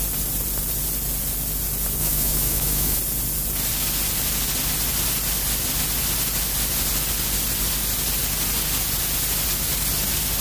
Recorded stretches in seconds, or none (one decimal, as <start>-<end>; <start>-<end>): 0.0-2.0; 3.0-10.4